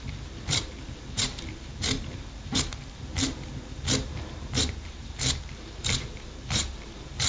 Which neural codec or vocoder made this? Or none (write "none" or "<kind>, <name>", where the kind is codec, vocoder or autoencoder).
vocoder, BigVGAN v2